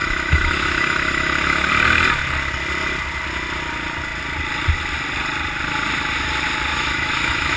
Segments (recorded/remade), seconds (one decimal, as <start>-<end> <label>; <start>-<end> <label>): 0.0-1.7 remade; 1.7-6.7 recorded; 6.7-7.6 remade